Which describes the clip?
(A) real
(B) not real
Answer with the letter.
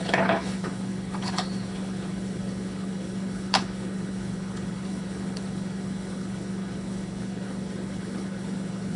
B